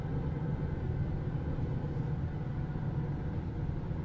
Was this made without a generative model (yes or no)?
yes